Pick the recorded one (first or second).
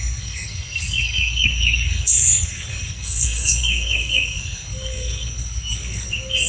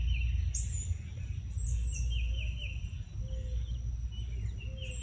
second